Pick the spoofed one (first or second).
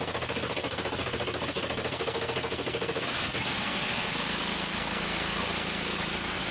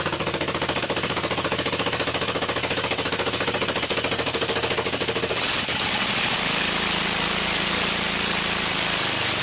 first